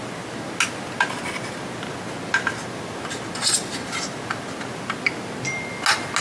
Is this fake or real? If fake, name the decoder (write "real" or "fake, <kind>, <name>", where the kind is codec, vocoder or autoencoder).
real